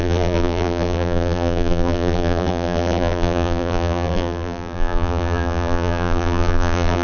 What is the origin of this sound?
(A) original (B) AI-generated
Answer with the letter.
B